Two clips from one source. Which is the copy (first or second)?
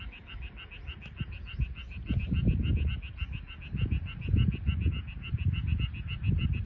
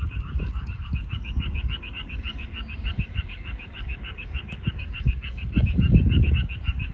second